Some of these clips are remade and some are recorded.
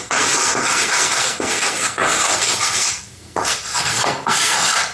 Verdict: remade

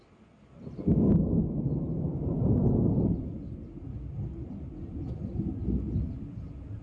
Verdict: recorded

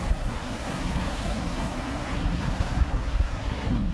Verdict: remade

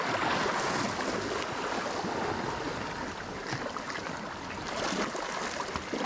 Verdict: recorded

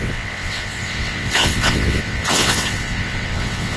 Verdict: remade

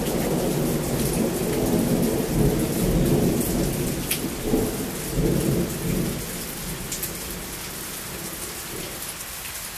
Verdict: recorded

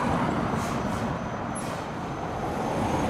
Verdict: recorded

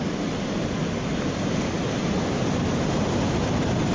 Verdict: recorded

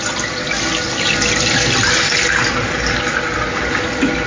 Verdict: recorded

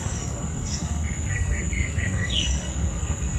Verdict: remade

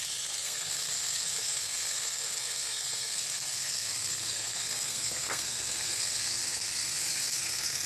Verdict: remade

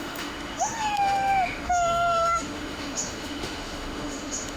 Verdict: remade